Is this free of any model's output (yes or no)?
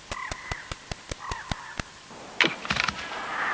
yes